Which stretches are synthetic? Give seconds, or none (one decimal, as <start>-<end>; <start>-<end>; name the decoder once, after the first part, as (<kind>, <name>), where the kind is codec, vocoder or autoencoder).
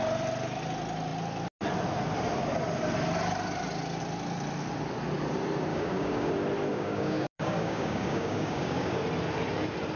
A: 5.7-6.3 (codec, DAC); 6.7-9.0